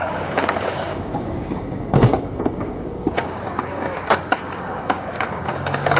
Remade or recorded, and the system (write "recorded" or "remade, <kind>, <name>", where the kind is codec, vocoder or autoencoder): remade, codec, DAC